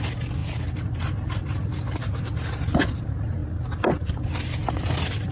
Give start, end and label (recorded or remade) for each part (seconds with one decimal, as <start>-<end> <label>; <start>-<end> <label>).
0.0-5.3 recorded